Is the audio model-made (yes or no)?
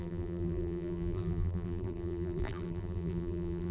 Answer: yes